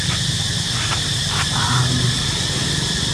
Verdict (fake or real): real